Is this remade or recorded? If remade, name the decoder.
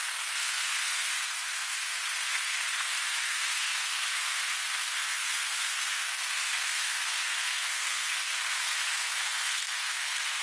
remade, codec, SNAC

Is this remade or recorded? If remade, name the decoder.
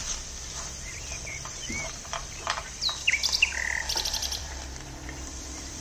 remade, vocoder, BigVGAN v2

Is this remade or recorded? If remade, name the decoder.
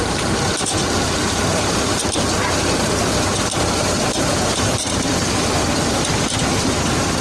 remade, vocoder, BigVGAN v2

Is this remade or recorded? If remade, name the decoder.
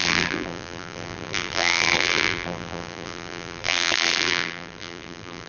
remade, vocoder, BigVGAN v2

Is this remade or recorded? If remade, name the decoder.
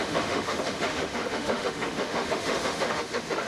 remade, autoencoder, DAC-VAE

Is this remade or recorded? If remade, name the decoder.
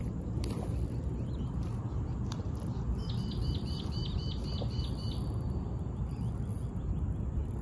recorded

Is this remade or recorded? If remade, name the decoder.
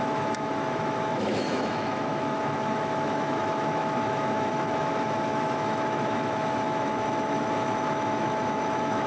remade, autoencoder, DAC-VAE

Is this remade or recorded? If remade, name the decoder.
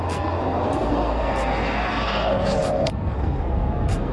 remade, codec, SNAC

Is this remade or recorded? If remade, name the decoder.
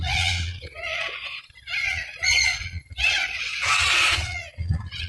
remade, vocoder, Vocos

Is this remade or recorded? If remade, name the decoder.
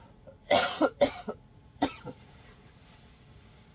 remade, vocoder, Vocos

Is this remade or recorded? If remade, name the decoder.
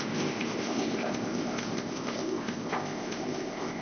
remade, codec, ZipCodec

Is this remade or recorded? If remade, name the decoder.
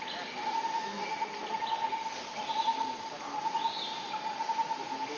recorded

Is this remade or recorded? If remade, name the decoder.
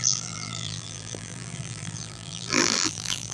remade, vocoder, BigVGAN v2